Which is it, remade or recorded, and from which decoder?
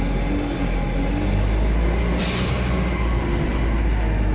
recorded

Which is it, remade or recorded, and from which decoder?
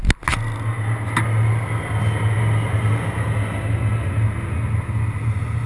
recorded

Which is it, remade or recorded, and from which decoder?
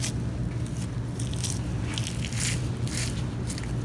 recorded